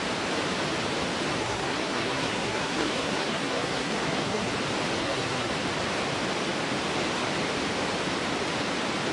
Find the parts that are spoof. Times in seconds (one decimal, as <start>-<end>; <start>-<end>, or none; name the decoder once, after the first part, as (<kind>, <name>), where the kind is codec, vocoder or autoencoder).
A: 1.4-4.5 (codec, SNAC); 5.0-5.5